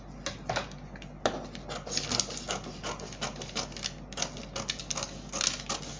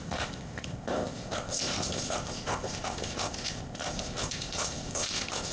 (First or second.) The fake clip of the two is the second